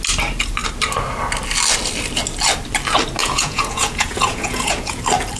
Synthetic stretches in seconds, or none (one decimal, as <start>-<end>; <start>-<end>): 3.2-5.0